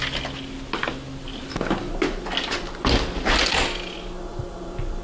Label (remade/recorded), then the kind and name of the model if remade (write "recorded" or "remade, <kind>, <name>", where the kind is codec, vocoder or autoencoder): recorded